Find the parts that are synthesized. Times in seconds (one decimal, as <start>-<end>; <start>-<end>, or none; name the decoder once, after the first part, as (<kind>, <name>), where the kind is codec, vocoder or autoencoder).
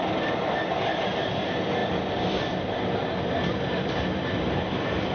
none